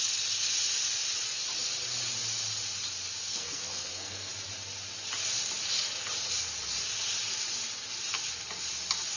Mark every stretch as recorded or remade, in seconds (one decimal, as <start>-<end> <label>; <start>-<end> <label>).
0.0-3.2 recorded; 3.2-4.3 remade; 4.3-9.2 recorded